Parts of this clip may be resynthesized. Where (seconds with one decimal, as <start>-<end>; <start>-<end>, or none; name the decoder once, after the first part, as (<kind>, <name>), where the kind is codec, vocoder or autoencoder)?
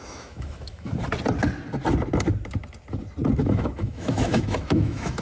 0.0-0.9 (autoencoder, DAC-VAE); 3.4-5.2